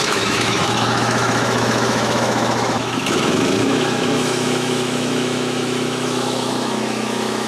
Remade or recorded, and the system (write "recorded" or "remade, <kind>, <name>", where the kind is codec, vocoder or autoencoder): remade, autoencoder, DAC-VAE